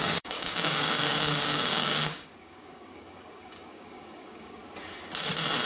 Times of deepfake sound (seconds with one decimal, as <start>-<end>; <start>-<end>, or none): 0.0-4.6